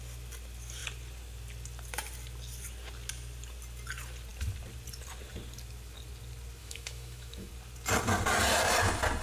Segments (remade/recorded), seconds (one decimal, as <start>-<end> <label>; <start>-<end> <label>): 0.0-6.6 recorded; 6.6-7.5 remade; 7.5-9.2 recorded